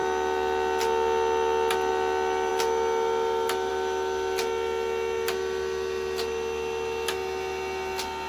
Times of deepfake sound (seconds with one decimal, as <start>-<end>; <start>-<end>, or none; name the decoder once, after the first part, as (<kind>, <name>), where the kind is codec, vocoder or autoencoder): none